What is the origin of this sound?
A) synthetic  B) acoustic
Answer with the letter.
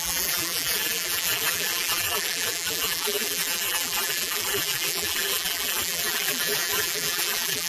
A